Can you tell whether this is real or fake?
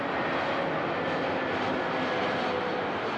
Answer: real